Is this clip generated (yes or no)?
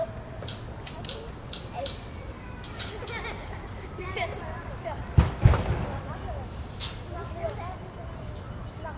yes